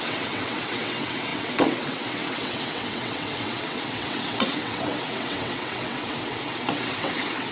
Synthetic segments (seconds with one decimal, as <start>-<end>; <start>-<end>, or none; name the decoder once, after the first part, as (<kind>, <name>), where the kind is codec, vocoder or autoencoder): 0.0-7.5 (vocoder, WaveNeXt)

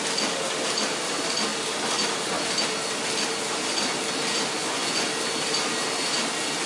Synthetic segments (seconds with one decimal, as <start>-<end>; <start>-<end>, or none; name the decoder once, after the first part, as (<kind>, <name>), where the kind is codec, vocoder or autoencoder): 4.6-5.1 (vocoder, Vocos)

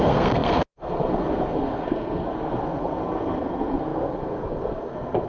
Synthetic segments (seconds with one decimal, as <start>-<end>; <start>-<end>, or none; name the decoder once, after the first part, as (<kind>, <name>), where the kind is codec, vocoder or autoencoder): 0.0-5.3 (codec, SNAC)

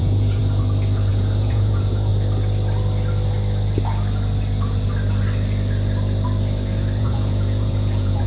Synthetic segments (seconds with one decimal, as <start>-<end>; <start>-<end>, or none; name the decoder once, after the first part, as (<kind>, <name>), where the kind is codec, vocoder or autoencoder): 0.0-0.4 (vocoder, Vocos); 1.1-2.1; 7.0-8.3

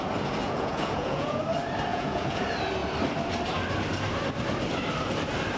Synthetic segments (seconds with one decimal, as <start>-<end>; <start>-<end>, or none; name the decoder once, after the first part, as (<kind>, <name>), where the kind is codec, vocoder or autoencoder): 0.4-1.4 (vocoder, Vocos); 1.9-2.4